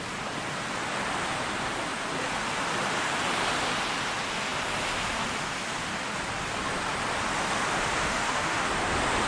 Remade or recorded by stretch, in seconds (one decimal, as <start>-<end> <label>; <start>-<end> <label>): 0.0-8.0 recorded; 8.0-8.7 remade; 8.7-9.3 recorded